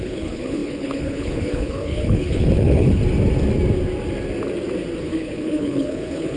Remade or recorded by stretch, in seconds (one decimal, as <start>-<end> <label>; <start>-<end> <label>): 0.0-3.0 remade; 3.0-5.0 recorded; 5.0-6.4 remade